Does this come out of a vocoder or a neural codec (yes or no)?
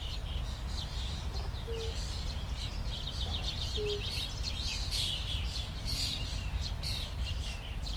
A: no